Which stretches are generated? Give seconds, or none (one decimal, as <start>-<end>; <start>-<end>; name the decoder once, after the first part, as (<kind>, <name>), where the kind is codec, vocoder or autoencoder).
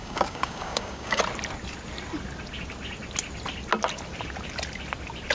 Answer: 0.0-1.2 (codec, DAC)